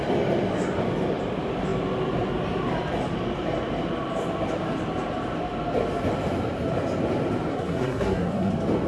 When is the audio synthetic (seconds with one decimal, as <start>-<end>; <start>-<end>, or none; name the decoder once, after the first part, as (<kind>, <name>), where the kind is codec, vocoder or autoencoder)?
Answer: 7.5-8.5 (codec, SNAC)